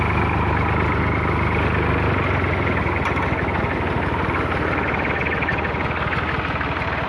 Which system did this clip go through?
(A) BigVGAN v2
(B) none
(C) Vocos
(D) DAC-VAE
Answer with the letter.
B